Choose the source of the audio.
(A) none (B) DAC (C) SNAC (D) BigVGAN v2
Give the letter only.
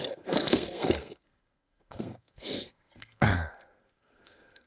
C